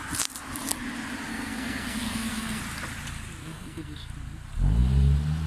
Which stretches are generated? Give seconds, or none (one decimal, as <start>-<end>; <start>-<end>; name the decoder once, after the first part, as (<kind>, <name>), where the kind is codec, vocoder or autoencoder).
1.3-2.6 (codec, SNAC); 3.4-4.1